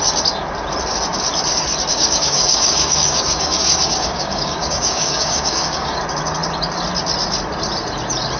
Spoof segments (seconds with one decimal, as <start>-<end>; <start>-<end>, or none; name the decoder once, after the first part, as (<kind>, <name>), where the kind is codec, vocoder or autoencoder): 1.9-6.0 (codec, DAC)